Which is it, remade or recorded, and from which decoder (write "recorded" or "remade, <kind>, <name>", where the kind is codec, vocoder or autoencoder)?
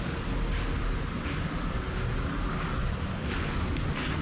recorded